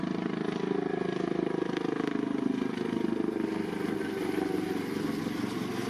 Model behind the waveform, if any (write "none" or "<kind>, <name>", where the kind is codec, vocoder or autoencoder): none